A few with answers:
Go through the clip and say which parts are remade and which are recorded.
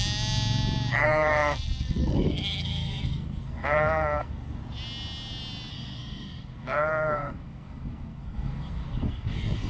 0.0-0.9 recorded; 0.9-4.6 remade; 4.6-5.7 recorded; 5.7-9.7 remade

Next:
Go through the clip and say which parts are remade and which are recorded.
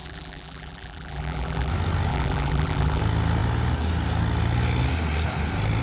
0.0-1.7 remade; 1.7-2.1 recorded; 2.1-3.0 remade; 3.0-5.8 recorded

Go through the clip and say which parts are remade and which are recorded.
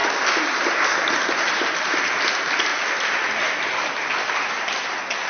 0.0-5.3 recorded